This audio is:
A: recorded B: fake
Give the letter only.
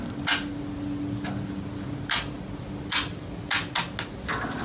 A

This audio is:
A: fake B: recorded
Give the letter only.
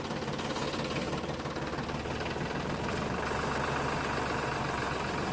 B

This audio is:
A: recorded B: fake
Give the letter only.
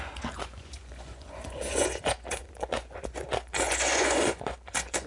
B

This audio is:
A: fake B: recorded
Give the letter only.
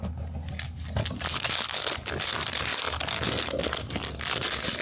B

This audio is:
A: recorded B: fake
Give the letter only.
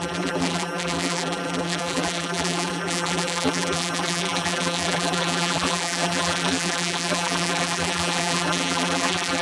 B